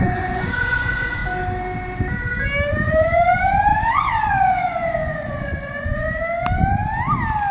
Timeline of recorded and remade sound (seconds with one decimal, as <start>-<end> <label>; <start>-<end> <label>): 0.0-1.2 remade; 1.2-2.7 recorded; 2.7-6.2 remade; 6.2-7.5 recorded